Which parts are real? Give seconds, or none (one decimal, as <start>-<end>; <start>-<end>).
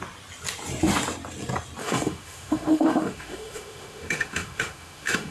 0.0-1.8